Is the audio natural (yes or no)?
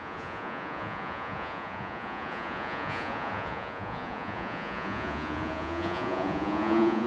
no